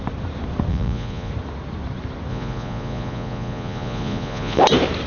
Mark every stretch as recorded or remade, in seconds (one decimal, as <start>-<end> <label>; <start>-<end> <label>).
0.0-0.7 recorded; 0.7-1.3 remade; 1.3-2.3 recorded; 2.3-4.6 remade; 4.6-5.1 recorded